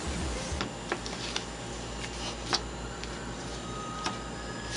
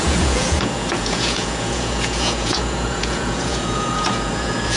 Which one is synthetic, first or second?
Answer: second